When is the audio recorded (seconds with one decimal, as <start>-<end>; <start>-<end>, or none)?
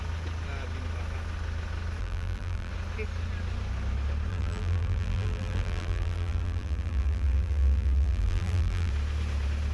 0.0-2.0; 2.7-4.3; 8.9-9.7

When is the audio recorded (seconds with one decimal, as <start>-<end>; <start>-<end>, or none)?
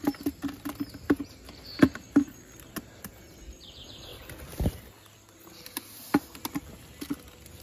0.0-4.1; 7.1-7.6